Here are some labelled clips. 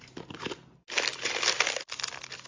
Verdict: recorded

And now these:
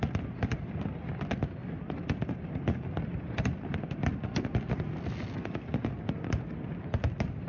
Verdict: recorded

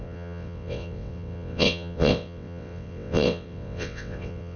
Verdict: remade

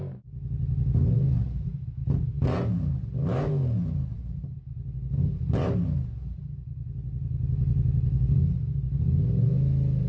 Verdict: recorded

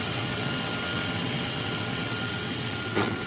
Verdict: remade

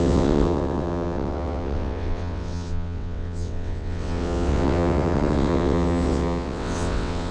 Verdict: remade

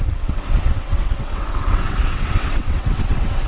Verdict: remade